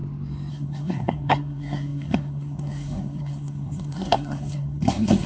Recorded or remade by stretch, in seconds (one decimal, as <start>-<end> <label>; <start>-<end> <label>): 0.0-0.5 recorded; 0.5-5.3 remade